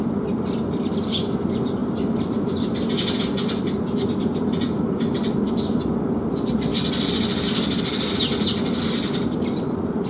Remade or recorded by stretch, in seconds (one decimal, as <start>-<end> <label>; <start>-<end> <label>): 0.0-10.1 recorded